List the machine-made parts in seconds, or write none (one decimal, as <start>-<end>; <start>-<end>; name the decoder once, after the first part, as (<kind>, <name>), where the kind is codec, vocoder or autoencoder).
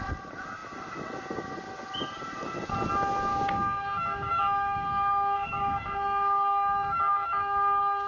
3.3-8.1 (codec, DAC)